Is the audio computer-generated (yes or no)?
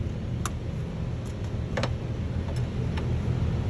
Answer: no